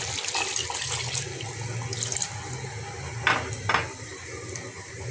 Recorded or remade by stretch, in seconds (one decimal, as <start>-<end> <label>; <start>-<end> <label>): 0.0-5.1 recorded